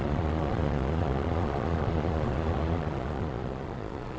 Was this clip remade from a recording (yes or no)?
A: yes